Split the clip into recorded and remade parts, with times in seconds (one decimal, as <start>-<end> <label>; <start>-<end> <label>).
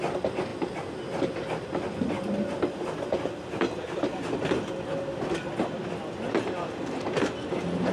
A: 0.0-7.9 recorded